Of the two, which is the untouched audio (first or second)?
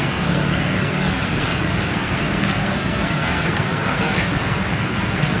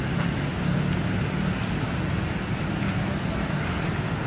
second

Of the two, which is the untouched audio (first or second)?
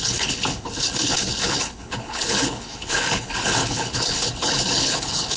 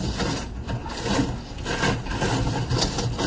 second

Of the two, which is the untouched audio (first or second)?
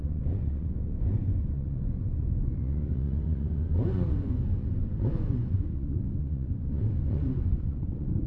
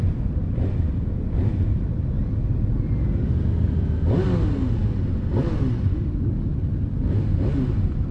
second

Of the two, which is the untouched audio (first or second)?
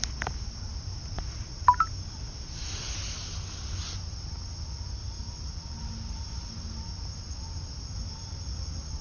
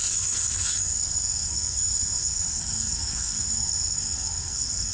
first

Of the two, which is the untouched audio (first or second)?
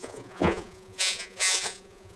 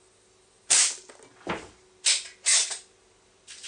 second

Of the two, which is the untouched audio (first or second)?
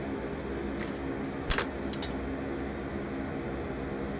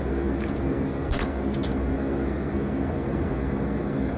first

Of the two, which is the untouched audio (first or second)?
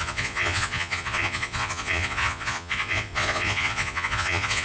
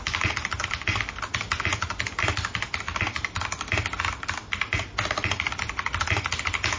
second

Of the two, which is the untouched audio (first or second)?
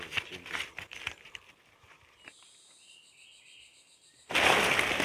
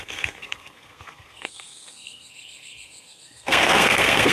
first